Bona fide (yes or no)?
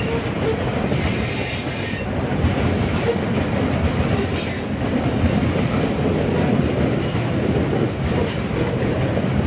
yes